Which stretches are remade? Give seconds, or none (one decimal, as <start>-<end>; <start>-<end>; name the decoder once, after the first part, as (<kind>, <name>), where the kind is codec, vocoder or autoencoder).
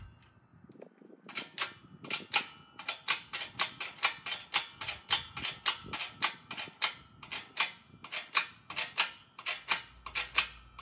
none